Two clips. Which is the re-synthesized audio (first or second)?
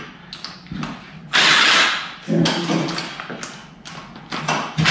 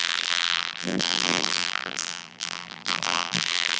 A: second